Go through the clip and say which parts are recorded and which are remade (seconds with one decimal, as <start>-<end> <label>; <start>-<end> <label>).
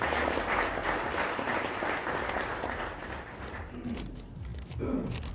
0.0-0.8 recorded; 0.8-4.0 remade; 4.0-5.3 recorded